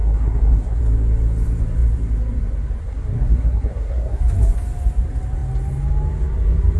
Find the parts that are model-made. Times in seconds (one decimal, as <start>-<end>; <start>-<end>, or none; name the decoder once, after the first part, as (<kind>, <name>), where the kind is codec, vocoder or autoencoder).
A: 0.0-0.8 (codec, SNAC); 2.8-4.2